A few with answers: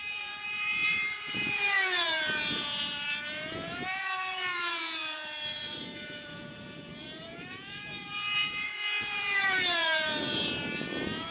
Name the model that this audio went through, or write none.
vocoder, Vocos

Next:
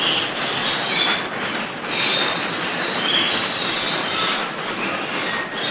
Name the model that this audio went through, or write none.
none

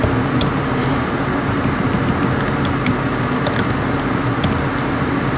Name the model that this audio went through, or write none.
none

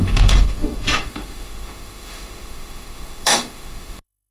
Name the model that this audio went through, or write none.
autoencoder, DAC-VAE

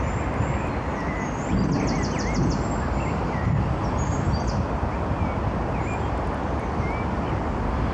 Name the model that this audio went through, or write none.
none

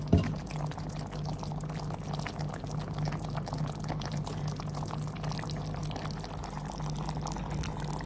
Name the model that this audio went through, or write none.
none